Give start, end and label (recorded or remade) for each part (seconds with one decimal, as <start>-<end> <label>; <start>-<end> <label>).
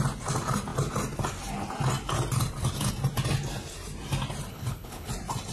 0.0-4.5 recorded; 4.5-5.1 remade; 5.1-5.5 recorded